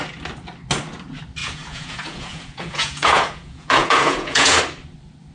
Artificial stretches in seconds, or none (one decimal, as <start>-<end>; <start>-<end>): 1.4-4.6